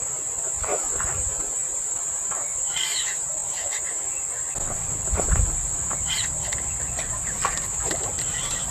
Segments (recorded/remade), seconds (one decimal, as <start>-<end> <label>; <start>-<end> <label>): 0.0-3.4 remade; 3.4-4.3 recorded; 4.3-8.7 remade